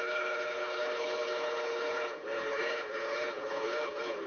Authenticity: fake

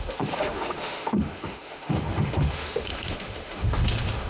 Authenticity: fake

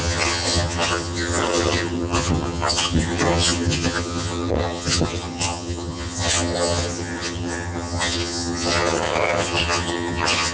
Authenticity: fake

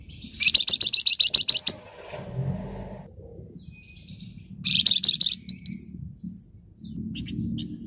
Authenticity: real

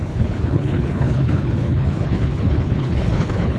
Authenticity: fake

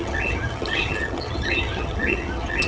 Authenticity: fake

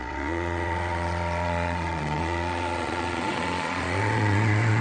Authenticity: fake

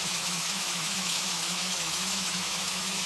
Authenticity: fake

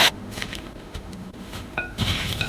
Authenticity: fake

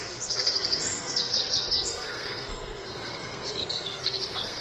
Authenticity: fake